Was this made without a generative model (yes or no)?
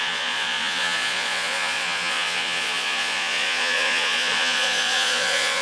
no